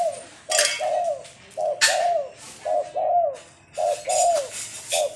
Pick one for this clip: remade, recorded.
recorded